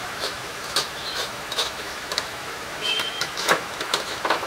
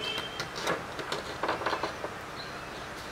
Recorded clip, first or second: second